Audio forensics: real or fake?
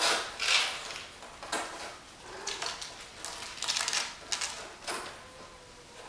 real